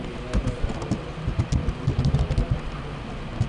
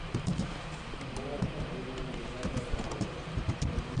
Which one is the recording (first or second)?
first